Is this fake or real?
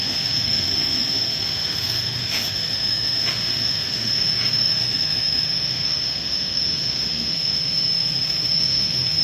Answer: fake